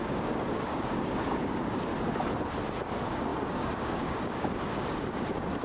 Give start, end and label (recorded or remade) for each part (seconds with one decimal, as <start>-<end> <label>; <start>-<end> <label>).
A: 0.0-1.9 remade; 1.9-2.8 recorded; 2.8-5.6 remade